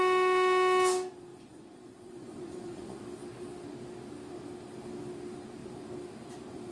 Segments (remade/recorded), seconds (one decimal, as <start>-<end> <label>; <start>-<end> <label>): 0.0-1.3 recorded; 1.3-3.0 remade; 3.0-6.7 recorded